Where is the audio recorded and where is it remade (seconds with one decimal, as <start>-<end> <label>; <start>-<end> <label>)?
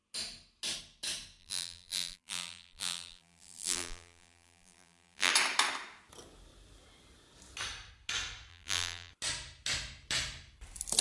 0.0-1.4 recorded; 1.4-5.3 remade; 5.3-8.5 recorded; 8.5-9.1 remade; 9.1-11.0 recorded